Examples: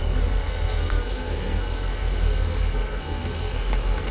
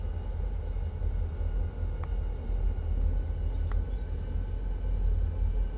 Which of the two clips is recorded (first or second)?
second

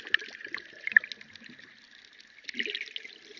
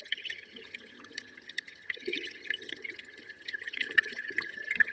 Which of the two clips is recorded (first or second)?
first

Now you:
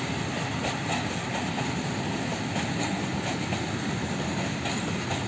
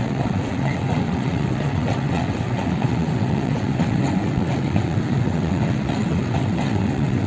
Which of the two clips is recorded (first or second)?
first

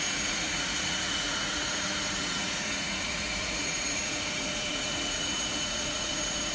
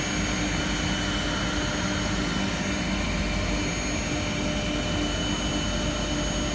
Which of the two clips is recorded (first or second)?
second